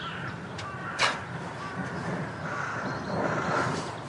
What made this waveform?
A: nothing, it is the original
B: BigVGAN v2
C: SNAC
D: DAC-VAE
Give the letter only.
A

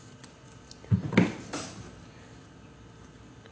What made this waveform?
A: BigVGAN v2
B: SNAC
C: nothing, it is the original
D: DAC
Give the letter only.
C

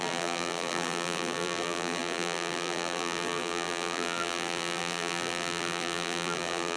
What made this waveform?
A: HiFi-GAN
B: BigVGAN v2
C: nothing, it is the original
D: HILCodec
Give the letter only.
B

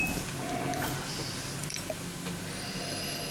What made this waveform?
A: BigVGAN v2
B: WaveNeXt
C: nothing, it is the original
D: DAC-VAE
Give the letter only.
C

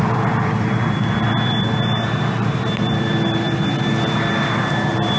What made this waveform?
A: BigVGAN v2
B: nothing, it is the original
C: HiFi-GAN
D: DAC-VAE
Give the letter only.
A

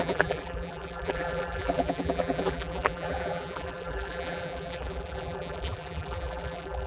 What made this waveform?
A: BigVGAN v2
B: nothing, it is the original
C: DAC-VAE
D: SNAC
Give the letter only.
A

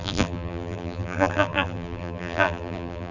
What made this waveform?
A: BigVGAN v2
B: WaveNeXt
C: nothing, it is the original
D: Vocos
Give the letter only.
A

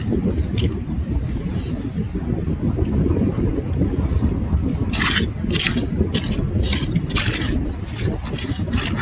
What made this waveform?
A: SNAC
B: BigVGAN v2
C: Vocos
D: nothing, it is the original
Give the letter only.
D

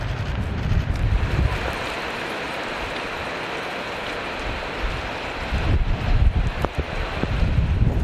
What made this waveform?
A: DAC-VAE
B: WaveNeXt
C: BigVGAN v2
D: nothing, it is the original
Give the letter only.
C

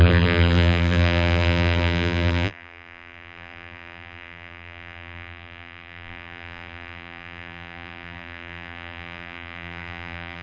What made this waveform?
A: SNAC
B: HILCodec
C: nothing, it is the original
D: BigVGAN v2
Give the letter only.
D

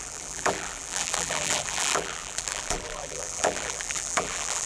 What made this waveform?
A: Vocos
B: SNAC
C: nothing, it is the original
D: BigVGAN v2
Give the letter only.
D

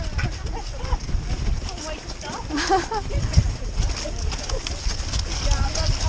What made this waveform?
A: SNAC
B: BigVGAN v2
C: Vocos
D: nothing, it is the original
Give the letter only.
D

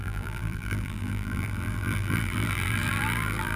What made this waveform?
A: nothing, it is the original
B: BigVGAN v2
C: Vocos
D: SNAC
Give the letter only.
B